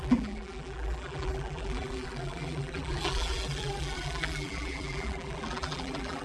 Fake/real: fake